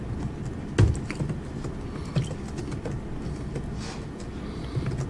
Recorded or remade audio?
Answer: recorded